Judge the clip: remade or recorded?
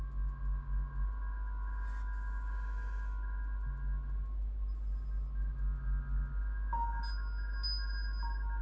recorded